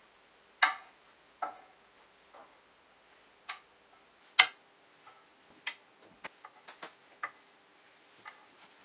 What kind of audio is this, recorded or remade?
recorded